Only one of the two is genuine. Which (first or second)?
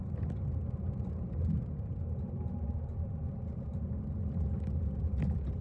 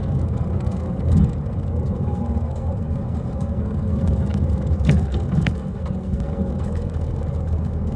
first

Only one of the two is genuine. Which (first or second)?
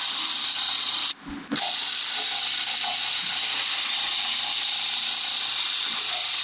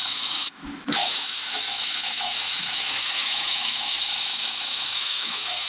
first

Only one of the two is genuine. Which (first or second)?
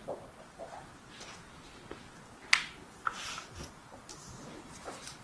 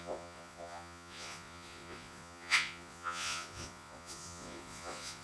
first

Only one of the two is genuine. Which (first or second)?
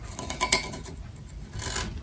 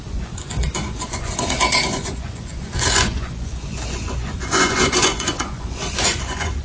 first